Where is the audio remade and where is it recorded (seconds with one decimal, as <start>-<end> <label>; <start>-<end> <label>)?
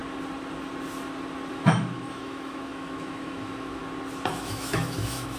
0.0-1.5 recorded; 1.5-3.8 remade; 3.8-4.3 recorded; 4.3-5.4 remade